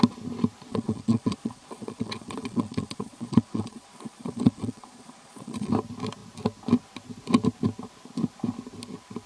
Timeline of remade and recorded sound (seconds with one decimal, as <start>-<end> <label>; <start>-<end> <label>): 0.0-0.7 recorded; 0.7-5.7 remade; 5.7-9.3 recorded